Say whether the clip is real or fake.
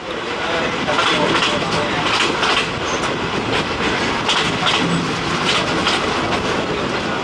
real